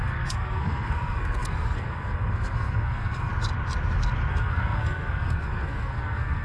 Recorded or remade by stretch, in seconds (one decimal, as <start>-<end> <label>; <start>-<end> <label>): 0.0-3.3 remade; 3.3-4.3 recorded; 4.3-6.4 remade